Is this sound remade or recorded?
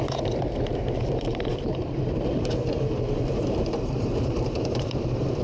remade